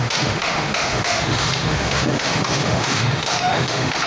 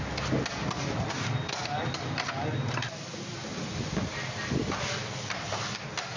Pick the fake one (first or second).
first